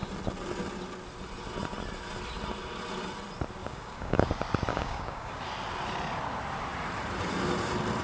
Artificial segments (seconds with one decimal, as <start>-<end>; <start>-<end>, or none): 3.6-4.3; 4.7-5.4